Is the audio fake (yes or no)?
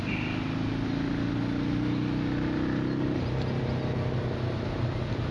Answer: no